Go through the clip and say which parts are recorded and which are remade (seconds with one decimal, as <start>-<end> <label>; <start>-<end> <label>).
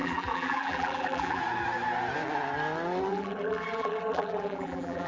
0.0-1.4 remade; 1.4-3.1 recorded; 3.1-5.1 remade